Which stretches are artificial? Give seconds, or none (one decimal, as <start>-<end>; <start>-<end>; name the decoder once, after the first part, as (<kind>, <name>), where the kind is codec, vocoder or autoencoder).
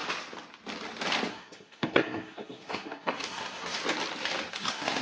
1.3-3.8 (codec, SNAC); 4.5-5.0